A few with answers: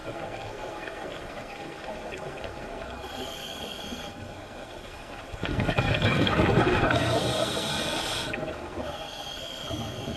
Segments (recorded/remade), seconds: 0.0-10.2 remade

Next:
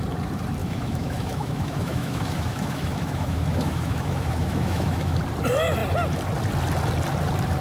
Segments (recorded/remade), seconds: 0.0-0.6 recorded; 0.6-5.2 remade; 5.2-7.6 recorded

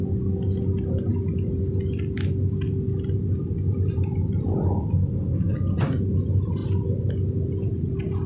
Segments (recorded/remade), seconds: 0.0-5.0 recorded; 5.0-5.5 remade; 5.5-8.3 recorded

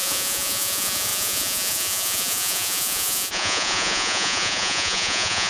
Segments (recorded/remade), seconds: 0.0-5.5 remade

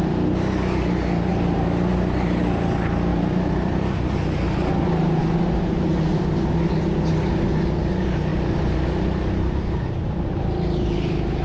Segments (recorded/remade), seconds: 0.0-3.1 recorded; 3.1-3.7 remade; 3.7-11.4 recorded

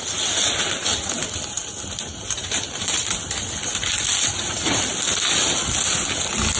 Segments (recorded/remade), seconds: 0.0-6.6 recorded

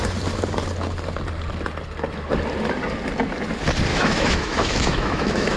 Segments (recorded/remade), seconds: 0.0-3.9 recorded; 3.9-5.6 remade